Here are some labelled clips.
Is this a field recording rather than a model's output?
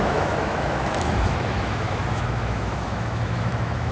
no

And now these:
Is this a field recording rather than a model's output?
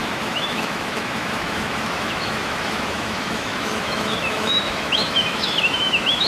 no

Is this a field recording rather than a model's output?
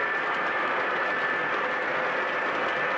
yes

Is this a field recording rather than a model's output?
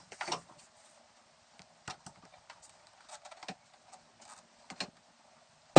yes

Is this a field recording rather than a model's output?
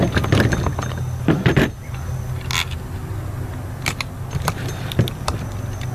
yes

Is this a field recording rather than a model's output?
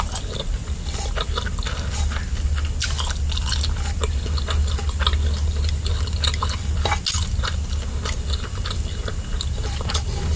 yes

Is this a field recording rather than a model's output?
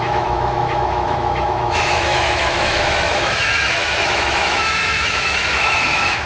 no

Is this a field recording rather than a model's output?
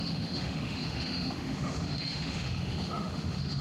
no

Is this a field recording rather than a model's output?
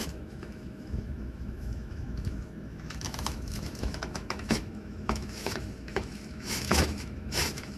no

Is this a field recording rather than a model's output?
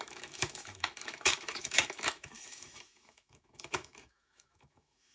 no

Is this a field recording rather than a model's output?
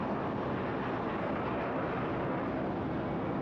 yes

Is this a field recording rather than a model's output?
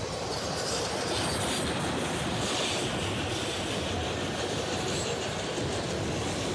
yes